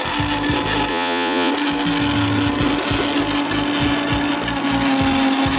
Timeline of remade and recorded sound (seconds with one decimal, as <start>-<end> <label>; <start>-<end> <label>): 0.0-0.9 recorded; 0.9-1.5 remade; 1.5-5.6 recorded

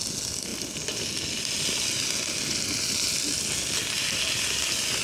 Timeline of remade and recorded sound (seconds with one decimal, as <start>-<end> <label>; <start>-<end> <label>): 0.0-5.0 recorded

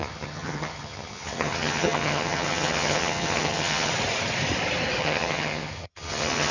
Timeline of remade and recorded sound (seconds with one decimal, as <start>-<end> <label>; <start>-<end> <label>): 0.0-3.9 remade; 3.9-5.0 recorded; 5.0-6.5 remade

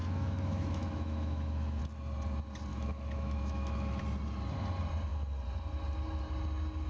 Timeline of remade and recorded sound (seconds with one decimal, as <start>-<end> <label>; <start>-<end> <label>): 0.0-1.8 remade; 1.8-2.7 recorded; 2.7-4.0 remade; 4.0-6.9 recorded

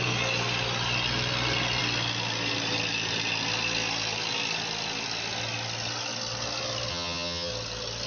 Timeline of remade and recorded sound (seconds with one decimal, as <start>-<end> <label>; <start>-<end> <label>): 0.0-6.9 recorded; 6.9-7.5 remade; 7.5-8.1 recorded

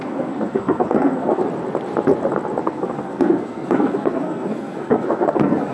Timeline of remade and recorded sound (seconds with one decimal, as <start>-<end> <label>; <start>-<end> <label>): 0.0-1.4 remade; 1.4-2.6 recorded; 2.6-5.7 remade

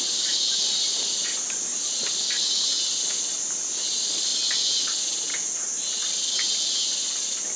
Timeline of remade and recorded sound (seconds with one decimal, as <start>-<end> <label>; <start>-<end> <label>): 0.0-7.6 recorded

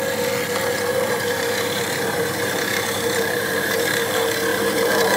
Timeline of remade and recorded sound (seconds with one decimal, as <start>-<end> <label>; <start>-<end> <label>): 0.0-0.9 recorded; 0.9-4.0 remade; 4.0-4.5 recorded; 4.5-5.2 remade